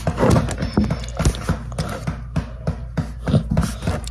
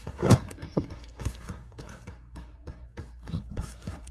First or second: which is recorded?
first